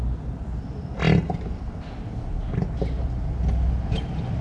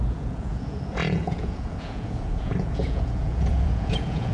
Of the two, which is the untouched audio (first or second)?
first